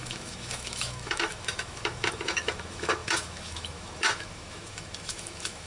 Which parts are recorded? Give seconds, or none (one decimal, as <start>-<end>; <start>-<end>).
none